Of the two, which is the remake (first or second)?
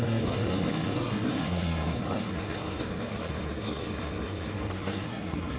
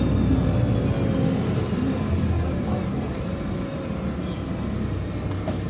first